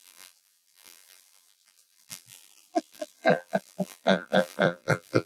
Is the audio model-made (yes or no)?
yes